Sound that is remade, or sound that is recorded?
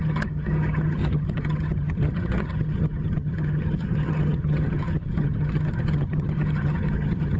remade